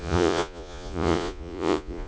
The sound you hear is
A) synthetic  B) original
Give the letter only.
A